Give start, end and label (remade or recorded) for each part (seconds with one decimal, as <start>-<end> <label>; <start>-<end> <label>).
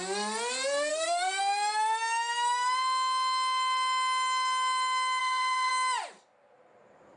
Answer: 0.0-0.9 recorded; 0.9-1.4 remade; 1.4-5.2 recorded; 5.2-5.7 remade; 5.7-7.2 recorded